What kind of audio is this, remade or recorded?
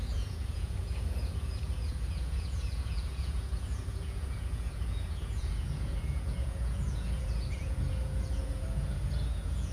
remade